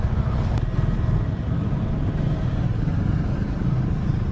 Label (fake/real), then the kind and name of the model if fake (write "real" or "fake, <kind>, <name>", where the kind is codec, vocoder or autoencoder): real